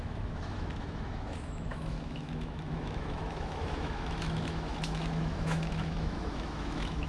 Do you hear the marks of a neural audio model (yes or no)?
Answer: yes